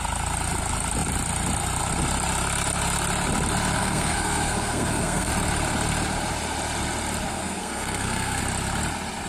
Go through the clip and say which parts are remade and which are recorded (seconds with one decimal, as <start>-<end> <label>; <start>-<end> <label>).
0.0-3.8 recorded; 3.8-5.3 remade; 5.3-7.3 recorded; 7.3-8.4 remade; 8.4-9.3 recorded